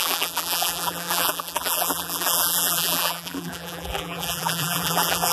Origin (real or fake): fake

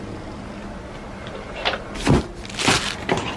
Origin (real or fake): real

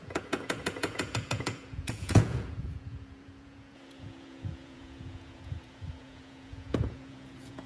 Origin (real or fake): fake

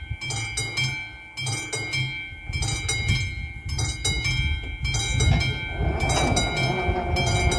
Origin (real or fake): real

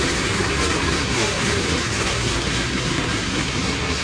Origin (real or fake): fake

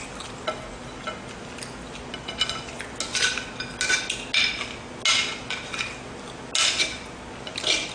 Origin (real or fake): real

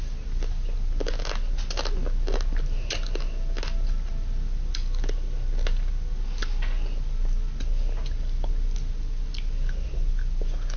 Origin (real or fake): real